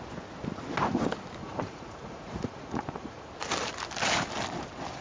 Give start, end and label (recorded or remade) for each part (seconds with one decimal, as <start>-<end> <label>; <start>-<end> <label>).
0.0-1.4 recorded; 1.4-3.3 remade; 3.3-5.0 recorded